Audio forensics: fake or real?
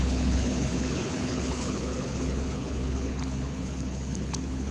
fake